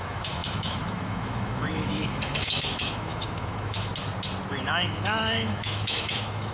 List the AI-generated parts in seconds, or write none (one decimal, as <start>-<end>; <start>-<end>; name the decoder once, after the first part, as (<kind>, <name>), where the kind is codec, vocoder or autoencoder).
0.0-3.9 (autoencoder, DAC-VAE); 4.5-6.5